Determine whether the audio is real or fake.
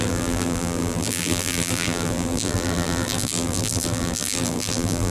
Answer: fake